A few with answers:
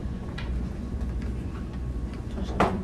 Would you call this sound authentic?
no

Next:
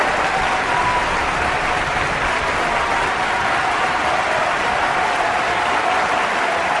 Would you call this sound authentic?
yes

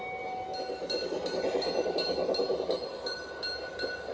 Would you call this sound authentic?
yes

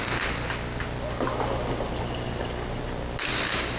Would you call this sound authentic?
yes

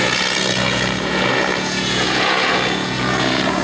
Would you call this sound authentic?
no